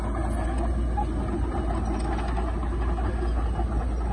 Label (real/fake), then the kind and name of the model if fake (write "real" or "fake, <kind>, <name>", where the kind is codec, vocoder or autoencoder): real